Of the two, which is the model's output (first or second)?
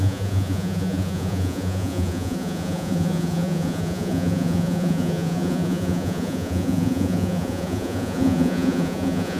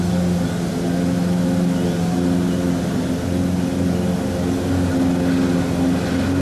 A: first